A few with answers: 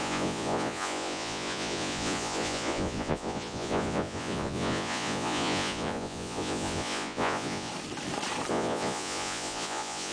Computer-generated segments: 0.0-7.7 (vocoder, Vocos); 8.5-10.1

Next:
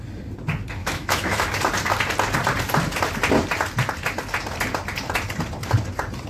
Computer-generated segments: 0.8-1.5 (autoencoder, DAC-VAE)

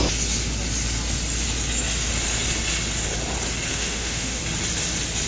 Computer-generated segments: 3.7-4.4 (autoencoder, DAC-VAE)

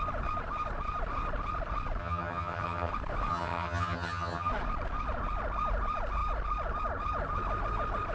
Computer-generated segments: 2.0-2.9 (vocoder, HiFi-GAN); 3.3-4.5

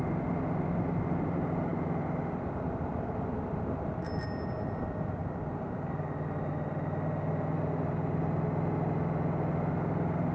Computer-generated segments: none

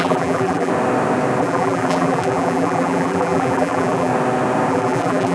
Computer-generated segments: 0.0-0.7 (vocoder, BigVGAN v2); 1.4-4.1; 4.7-5.3

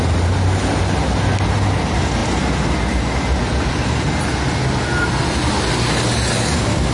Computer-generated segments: none

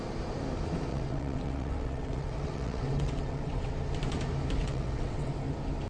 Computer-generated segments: 0.9-3.7 (vocoder, WaveNeXt); 4.6-5.3